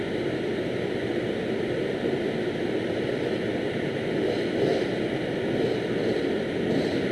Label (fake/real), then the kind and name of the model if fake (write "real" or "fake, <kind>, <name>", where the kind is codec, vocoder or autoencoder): real